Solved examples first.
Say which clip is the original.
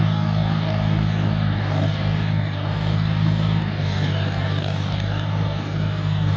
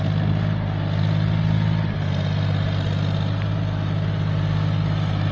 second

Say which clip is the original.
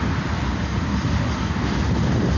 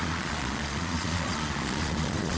first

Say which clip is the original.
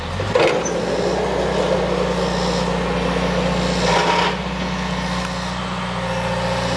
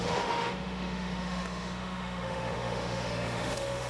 first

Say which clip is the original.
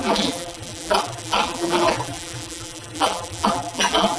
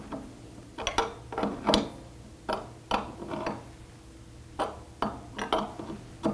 second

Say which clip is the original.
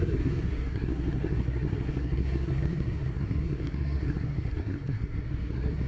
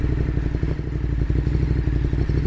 second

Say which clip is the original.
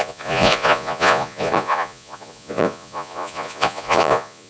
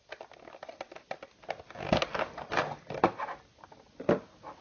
second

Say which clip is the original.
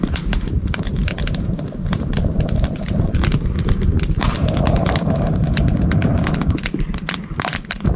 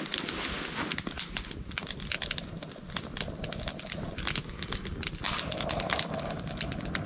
second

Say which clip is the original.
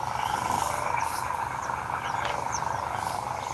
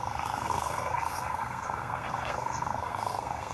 first